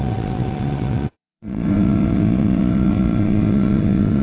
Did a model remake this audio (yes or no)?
yes